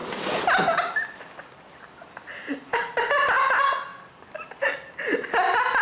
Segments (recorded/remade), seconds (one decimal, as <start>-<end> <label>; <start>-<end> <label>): 0.0-5.8 recorded